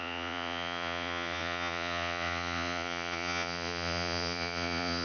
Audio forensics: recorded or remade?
remade